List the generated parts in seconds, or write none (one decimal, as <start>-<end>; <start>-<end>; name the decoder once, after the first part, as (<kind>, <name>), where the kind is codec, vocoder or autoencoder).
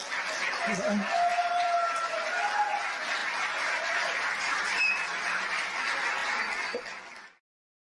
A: 1.3-2.1 (vocoder, BigVGAN v2); 3.2-5.8